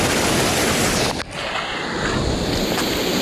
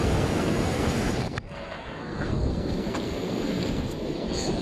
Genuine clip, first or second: first